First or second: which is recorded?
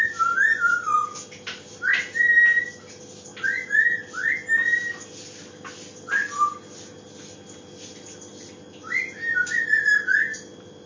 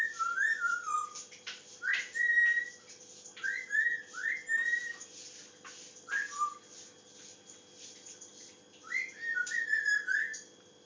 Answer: first